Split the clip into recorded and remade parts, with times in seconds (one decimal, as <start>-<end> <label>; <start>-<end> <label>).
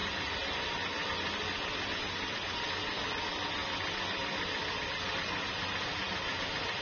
0.0-0.7 remade; 0.7-6.8 recorded